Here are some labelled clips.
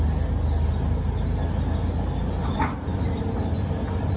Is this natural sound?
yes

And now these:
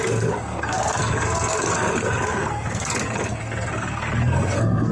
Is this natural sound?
no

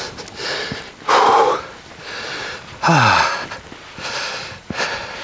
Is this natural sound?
yes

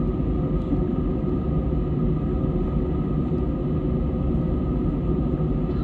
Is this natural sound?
yes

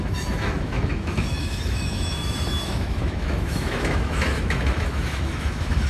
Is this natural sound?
no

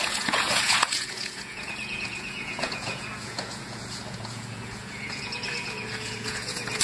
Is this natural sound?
no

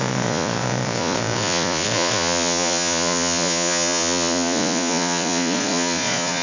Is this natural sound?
no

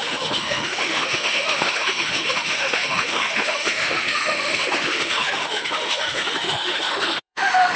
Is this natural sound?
no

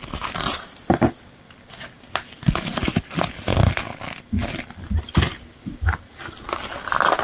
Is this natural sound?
yes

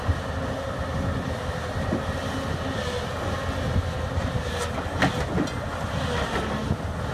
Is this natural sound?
yes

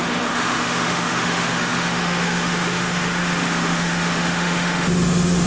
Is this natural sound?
no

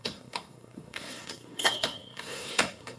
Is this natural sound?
no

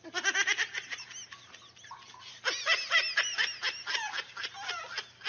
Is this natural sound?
yes